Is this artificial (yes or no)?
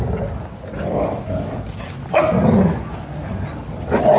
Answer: no